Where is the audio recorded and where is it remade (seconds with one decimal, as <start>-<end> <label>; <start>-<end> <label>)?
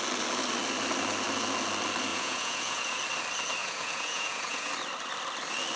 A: 0.0-2.1 recorded; 2.1-3.0 remade; 3.0-3.6 recorded; 3.6-4.7 remade; 4.7-5.8 recorded